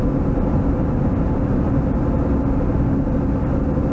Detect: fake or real real